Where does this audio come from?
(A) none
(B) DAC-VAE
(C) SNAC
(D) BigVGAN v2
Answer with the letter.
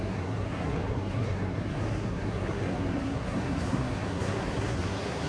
C